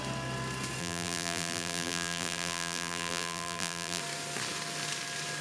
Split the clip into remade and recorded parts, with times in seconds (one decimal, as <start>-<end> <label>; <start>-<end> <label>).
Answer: 0.0-0.8 recorded; 0.8-4.0 remade; 4.0-5.4 recorded